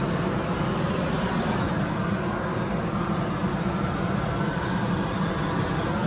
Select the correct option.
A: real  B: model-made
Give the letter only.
A